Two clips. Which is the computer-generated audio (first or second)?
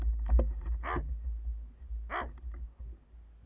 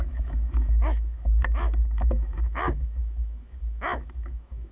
second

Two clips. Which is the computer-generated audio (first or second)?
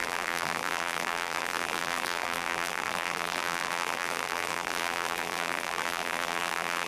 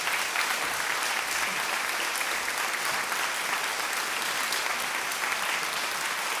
first